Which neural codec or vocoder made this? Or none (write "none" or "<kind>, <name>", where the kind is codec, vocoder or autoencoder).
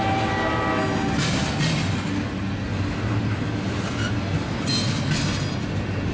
none